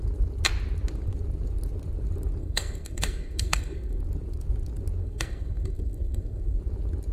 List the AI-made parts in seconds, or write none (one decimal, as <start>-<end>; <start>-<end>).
2.4-4.0; 5.0-6.6